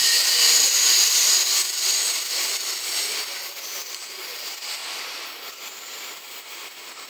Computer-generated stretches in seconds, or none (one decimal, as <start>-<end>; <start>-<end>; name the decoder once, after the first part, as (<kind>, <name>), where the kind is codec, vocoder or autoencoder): 0.0-4.8 (vocoder, BigVGAN v2); 5.5-7.1